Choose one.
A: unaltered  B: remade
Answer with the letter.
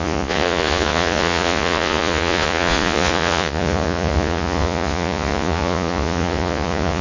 B